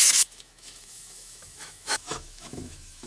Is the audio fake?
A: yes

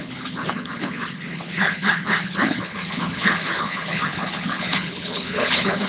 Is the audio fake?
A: yes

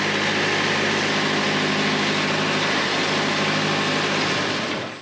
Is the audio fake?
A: no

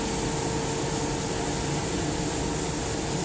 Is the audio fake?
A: no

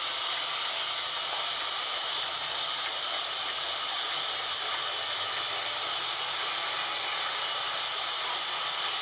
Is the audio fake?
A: no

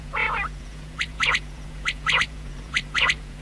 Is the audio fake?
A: yes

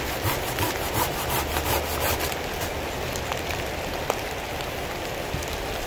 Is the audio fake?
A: no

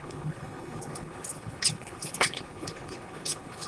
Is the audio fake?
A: yes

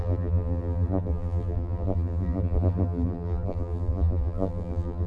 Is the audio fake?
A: yes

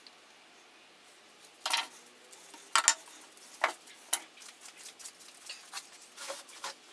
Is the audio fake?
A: no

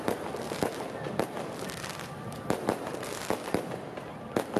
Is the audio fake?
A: no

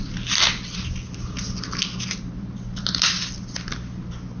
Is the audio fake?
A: no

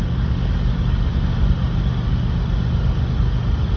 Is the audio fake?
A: no